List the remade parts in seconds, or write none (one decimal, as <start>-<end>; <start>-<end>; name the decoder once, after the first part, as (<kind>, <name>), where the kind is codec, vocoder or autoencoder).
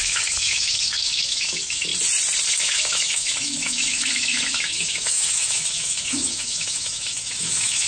0.0-1.9 (autoencoder, DAC-VAE); 2.5-7.9